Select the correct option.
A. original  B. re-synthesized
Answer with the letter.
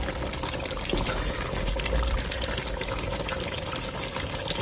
A